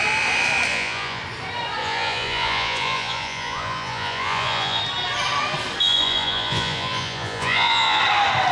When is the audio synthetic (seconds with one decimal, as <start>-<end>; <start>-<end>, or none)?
0.7-1.2; 1.8-4.8; 5.8-8.0